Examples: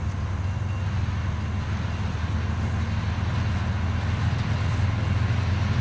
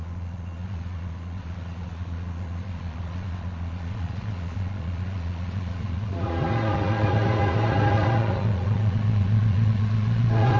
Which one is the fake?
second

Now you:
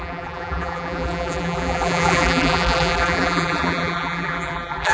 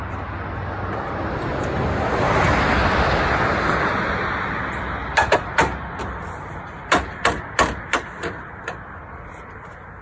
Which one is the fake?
first